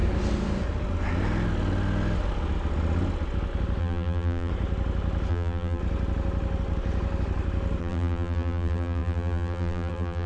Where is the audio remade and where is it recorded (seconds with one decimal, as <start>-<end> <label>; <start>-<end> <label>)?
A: 0.0-3.8 recorded; 3.8-4.5 remade; 4.5-5.3 recorded; 5.3-5.8 remade; 5.8-7.8 recorded; 7.8-10.3 remade